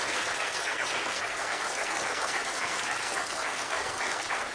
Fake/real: fake